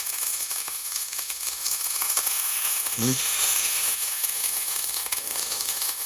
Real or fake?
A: fake